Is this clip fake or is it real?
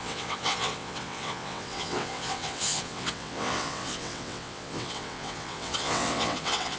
fake